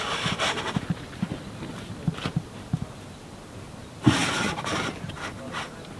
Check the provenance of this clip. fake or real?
fake